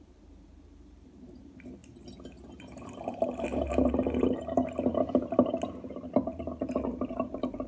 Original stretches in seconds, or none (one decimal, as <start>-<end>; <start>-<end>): 1.8-2.6